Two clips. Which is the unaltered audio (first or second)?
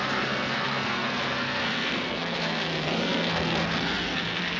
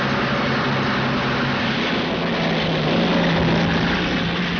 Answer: second